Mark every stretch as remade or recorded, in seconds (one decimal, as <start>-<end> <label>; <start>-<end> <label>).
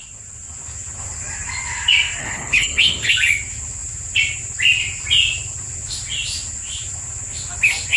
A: 0.0-2.2 recorded; 2.2-3.1 remade; 3.1-8.0 recorded